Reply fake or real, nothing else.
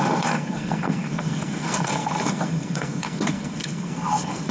fake